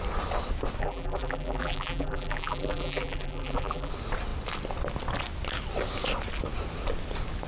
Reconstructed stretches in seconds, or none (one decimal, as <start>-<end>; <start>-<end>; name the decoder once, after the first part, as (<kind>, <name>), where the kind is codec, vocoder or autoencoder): 0.8-3.9 (vocoder, BigVGAN v2)